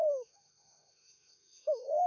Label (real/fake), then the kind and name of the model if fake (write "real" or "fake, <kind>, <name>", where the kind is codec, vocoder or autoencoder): fake, autoencoder, DAC-VAE